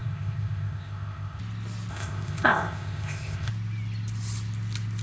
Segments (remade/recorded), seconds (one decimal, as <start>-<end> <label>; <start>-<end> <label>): 0.0-1.4 remade; 1.4-1.9 recorded; 1.9-3.5 remade; 3.5-5.0 recorded

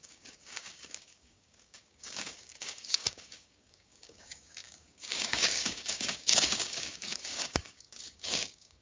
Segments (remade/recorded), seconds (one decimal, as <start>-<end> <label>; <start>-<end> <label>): 0.0-8.8 remade

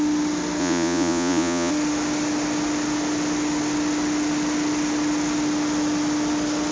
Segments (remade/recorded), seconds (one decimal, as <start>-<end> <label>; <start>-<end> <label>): 0.0-0.6 recorded; 0.6-1.7 remade; 1.7-6.7 recorded

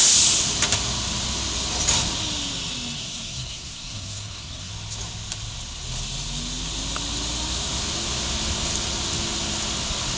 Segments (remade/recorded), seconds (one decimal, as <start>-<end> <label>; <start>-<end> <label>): 0.0-3.0 recorded; 3.0-4.7 remade; 4.7-10.2 recorded

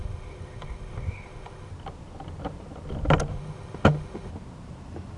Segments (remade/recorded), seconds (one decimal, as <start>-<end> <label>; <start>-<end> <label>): 0.0-1.7 remade; 1.7-3.3 recorded; 3.3-4.3 remade; 4.3-5.2 recorded

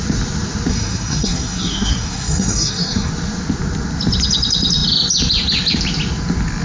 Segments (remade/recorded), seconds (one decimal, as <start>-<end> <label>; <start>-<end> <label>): 0.0-0.7 recorded; 0.7-3.1 remade; 3.1-6.6 recorded

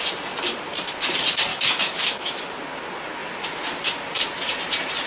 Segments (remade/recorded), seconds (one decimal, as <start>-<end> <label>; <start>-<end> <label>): 0.0-1.5 recorded; 1.5-2.4 remade; 2.4-5.1 recorded

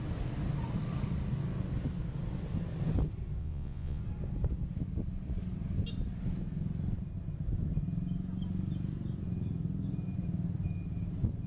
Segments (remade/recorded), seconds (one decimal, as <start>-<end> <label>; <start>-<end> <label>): 0.0-3.4 recorded; 3.4-4.0 remade; 4.0-11.5 recorded